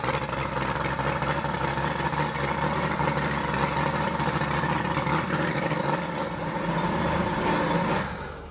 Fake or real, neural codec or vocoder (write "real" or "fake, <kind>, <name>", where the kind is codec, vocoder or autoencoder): real